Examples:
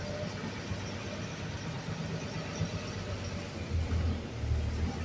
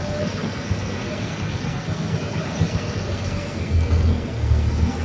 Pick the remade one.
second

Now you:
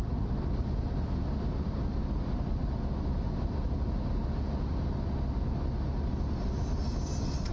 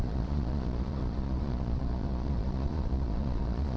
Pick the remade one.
second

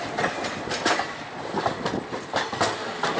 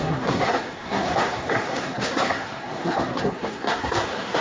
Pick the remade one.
second